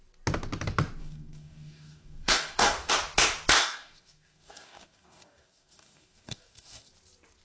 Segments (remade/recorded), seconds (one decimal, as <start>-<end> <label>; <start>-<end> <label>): 0.0-1.0 recorded; 1.0-2.9 remade; 2.9-3.6 recorded; 3.6-6.9 remade; 6.9-7.4 recorded